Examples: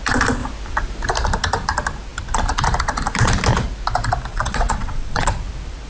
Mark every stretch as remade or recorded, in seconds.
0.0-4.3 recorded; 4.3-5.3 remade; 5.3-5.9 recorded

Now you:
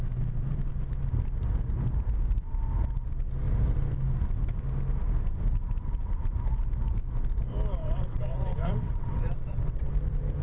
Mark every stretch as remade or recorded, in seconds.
0.0-7.8 recorded; 7.8-9.9 remade; 9.9-10.4 recorded

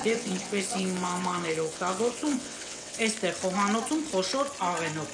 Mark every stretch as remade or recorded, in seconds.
0.0-3.0 remade; 3.0-5.1 recorded

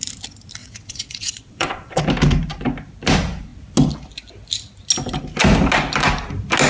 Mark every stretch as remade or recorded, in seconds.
0.0-0.6 recorded; 0.6-2.0 remade; 2.0-6.7 recorded